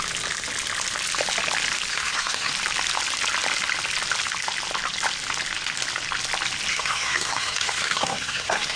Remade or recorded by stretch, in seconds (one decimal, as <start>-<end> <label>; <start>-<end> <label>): 0.0-1.9 recorded; 1.9-2.5 remade; 2.5-6.7 recorded; 6.7-8.8 remade